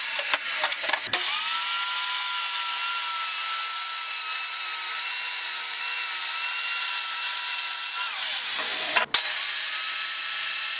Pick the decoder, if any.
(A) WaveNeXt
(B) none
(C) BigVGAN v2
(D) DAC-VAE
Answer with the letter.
B